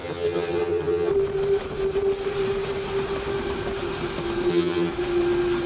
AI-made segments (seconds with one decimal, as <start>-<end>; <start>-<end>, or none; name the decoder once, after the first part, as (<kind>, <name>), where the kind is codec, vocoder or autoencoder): 0.0-1.1 (vocoder, HiFi-GAN); 4.5-4.9